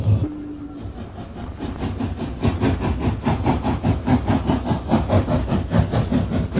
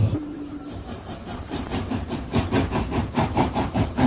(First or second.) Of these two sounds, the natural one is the first